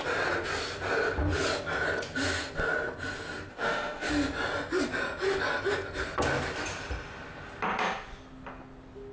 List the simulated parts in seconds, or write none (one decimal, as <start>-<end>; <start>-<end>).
3.5-4.1